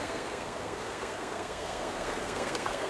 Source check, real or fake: fake